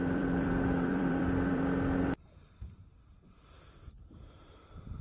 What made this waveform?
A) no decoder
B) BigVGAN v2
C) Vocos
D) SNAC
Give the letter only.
B